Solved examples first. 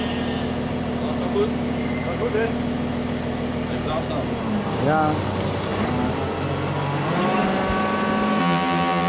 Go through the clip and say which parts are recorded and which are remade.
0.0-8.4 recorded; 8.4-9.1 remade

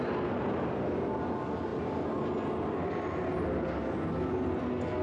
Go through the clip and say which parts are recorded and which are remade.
0.0-5.0 recorded

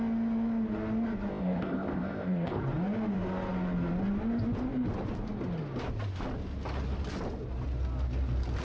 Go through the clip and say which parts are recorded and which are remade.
0.0-1.3 recorded; 1.3-2.6 remade; 2.6-8.6 recorded

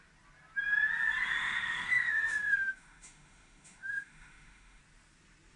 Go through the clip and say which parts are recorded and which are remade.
0.0-1.4 recorded; 1.4-4.8 remade; 4.8-5.6 recorded